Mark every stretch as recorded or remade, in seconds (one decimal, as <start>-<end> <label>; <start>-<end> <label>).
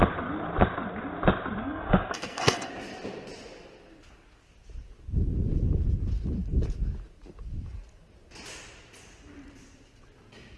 0.0-1.6 recorded; 1.6-2.7 remade; 2.7-10.6 recorded